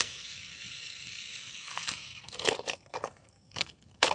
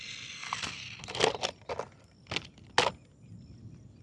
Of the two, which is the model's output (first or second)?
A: first